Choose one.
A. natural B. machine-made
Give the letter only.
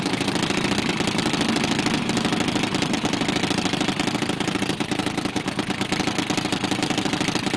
A